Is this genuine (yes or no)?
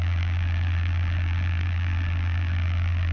no